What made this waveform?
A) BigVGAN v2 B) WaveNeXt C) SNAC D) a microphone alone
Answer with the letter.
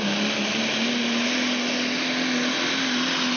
D